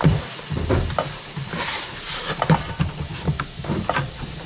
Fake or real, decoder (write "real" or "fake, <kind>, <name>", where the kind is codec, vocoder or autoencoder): real